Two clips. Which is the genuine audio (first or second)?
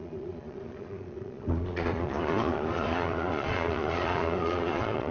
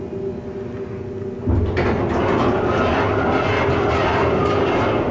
second